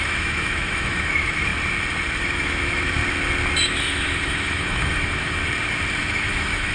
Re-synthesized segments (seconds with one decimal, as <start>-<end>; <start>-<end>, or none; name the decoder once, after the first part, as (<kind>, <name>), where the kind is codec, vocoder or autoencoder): 0.0-1.5 (autoencoder, DAC-VAE); 2.2-3.0; 3.6-5.4; 6.0-6.7